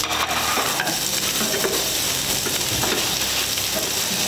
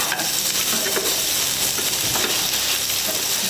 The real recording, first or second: second